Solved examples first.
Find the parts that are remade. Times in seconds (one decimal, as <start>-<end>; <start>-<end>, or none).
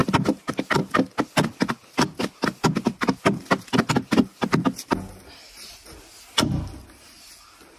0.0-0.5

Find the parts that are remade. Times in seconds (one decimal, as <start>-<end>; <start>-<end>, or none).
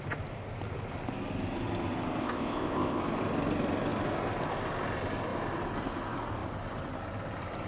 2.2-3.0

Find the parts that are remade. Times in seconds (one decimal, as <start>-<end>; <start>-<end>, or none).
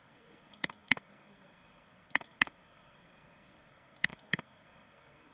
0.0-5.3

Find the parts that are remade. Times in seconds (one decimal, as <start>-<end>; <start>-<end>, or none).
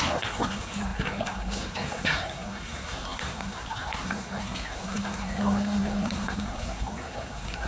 0.0-7.7